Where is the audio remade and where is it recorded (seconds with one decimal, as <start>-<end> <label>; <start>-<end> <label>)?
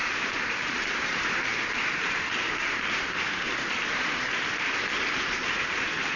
0.0-6.2 remade